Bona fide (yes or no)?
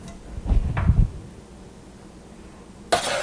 yes